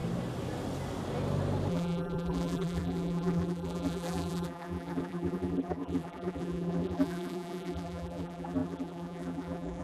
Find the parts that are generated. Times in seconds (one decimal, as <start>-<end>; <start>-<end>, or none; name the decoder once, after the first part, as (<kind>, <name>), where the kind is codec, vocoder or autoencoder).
1.7-9.8 (vocoder, BigVGAN v2)